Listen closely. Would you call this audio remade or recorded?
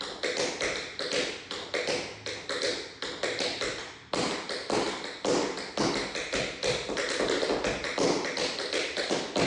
recorded